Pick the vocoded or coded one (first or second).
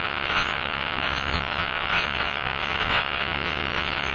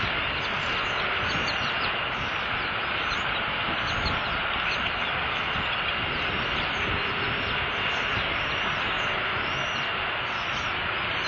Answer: first